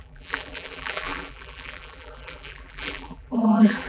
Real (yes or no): no